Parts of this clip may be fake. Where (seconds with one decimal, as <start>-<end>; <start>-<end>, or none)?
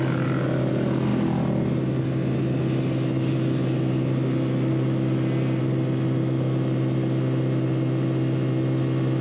none